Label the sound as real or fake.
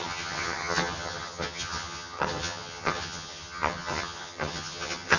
fake